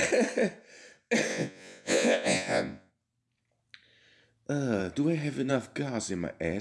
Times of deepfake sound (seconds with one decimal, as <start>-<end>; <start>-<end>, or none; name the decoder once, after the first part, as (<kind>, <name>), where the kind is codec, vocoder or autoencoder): 1.3-2.9 (vocoder, Vocos)